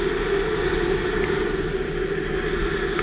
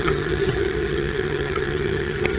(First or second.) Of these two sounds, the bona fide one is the first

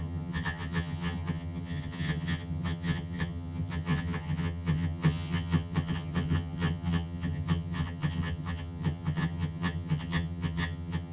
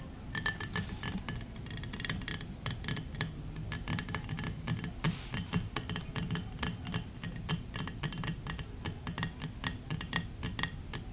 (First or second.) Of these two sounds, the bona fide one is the second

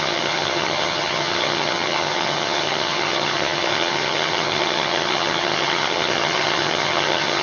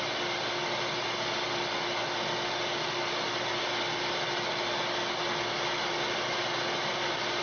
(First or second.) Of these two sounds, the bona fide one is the second